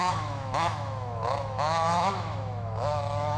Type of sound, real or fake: fake